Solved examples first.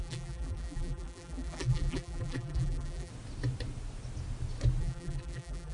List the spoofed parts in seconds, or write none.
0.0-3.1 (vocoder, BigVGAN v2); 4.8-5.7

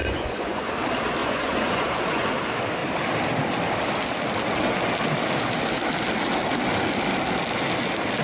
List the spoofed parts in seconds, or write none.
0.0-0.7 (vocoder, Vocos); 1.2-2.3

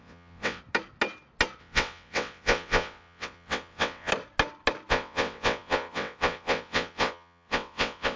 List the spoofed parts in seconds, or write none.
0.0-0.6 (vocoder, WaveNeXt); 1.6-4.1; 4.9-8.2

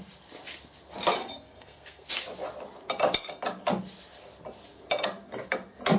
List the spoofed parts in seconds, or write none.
1.2-2.1 (codec, SNAC)

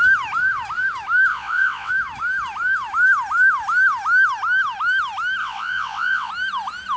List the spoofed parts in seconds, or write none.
1.3-1.9 (vocoder, WaveNeXt); 5.4-6.3

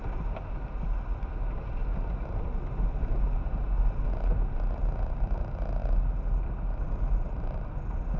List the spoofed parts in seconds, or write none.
none

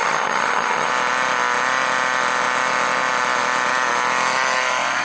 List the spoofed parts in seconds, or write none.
0.0-0.9 (vocoder, HiFi-GAN)

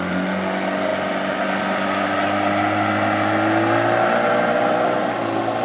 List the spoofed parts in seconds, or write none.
none